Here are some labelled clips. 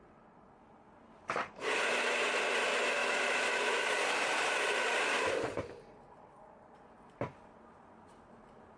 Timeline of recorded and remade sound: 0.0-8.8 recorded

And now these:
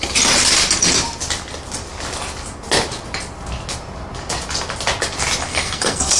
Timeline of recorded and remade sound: 0.0-5.5 recorded; 5.5-6.2 remade

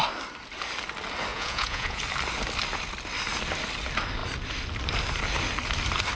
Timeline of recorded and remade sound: 0.0-1.3 recorded; 1.3-2.0 remade; 2.0-6.1 recorded

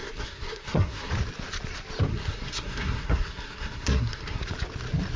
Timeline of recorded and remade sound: 0.0-1.1 remade; 1.1-2.1 recorded; 2.1-4.4 remade; 4.4-5.2 recorded

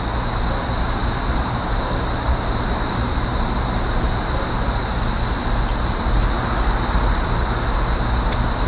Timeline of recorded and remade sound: 0.0-1.0 recorded; 1.0-4.5 remade; 4.5-8.7 recorded